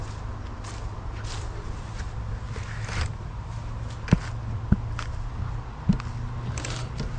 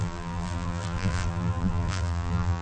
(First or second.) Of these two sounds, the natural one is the first